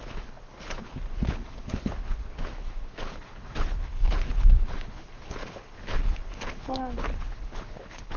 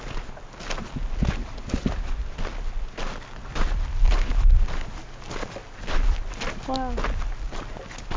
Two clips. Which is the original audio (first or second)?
second